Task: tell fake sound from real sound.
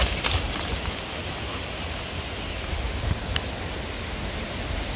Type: real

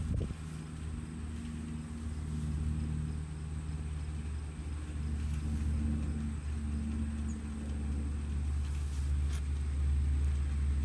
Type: real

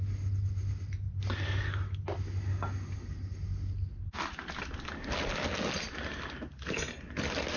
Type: real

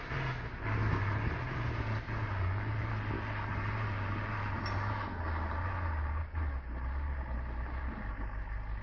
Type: real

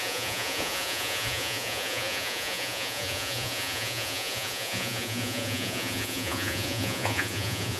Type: fake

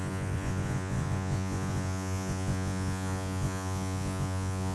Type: fake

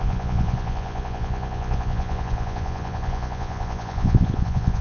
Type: fake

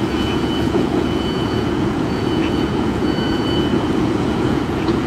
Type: fake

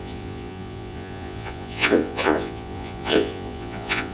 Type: fake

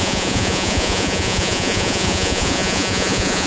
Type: fake